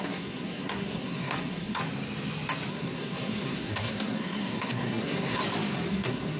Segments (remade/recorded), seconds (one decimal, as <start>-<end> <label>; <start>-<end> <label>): 0.0-1.8 remade; 1.8-2.7 recorded; 2.7-5.4 remade; 5.4-5.9 recorded; 5.9-6.4 remade